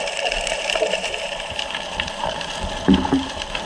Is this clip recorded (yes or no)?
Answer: no